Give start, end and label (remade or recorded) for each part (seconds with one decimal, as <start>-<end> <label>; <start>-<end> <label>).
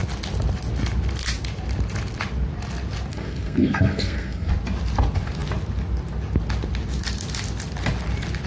0.0-3.1 recorded; 3.1-4.5 remade; 4.5-8.5 recorded